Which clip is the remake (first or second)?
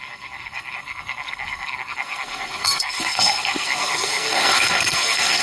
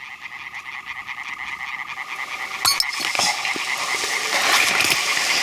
first